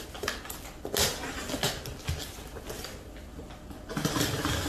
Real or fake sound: real